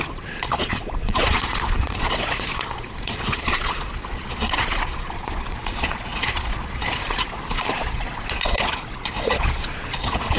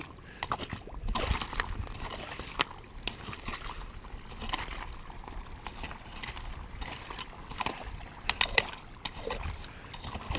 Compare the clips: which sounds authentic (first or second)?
second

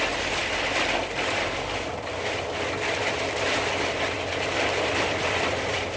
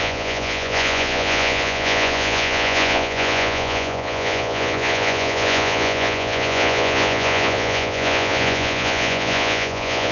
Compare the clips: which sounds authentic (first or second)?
first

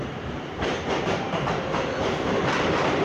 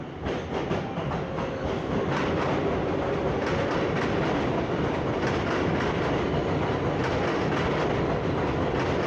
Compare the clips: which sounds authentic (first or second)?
second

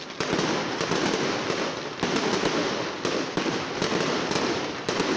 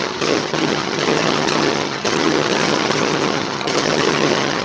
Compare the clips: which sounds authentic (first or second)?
first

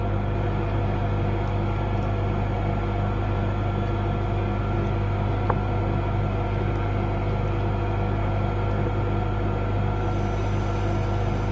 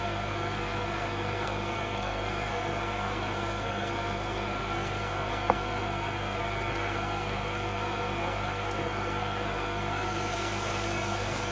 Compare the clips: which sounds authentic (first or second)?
first